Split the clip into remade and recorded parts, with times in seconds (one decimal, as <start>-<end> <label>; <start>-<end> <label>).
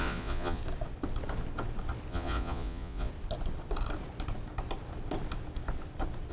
0.0-0.6 remade; 0.6-2.1 recorded; 2.1-3.1 remade; 3.1-6.3 recorded